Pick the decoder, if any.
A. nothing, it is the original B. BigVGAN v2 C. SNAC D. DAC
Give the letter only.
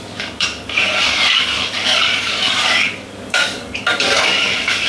D